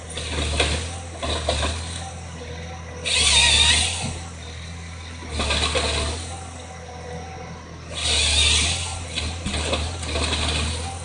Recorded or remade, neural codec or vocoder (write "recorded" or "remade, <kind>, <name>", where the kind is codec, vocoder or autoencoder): recorded